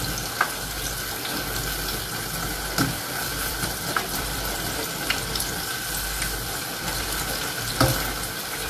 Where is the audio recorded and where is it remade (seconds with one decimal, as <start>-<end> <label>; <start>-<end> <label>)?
0.0-3.2 recorded; 3.2-7.4 remade; 7.4-8.7 recorded